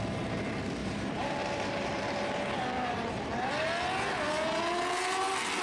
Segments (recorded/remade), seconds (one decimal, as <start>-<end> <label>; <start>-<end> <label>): 0.0-0.8 recorded; 0.8-3.5 remade; 3.5-5.6 recorded